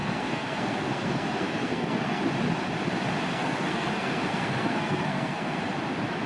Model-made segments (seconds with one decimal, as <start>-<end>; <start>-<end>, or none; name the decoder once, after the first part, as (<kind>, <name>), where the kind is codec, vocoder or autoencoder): 0.0-2.2 (codec, SNAC); 3.3-5.6

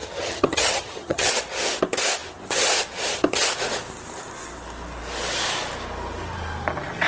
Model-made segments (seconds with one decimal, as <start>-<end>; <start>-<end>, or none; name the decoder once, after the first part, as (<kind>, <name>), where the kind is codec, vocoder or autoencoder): 0.0-1.3 (vocoder, HiFi-GAN)

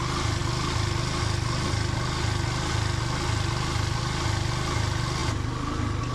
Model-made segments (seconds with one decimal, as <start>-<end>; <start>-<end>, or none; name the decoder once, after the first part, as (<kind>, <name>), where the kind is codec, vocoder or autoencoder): none

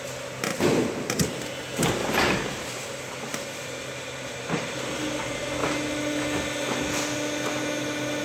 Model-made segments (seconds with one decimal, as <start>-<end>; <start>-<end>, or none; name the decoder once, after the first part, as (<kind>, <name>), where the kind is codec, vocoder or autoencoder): 2.0-4.6 (vocoder, BigVGAN v2)

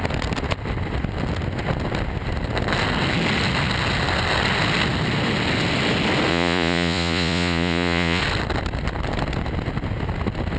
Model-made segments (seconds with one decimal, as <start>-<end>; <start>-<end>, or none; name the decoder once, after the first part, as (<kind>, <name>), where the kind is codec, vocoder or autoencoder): 6.3-8.2 (vocoder, Vocos)